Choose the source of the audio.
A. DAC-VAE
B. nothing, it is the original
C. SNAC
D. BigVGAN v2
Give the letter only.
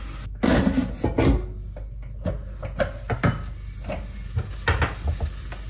B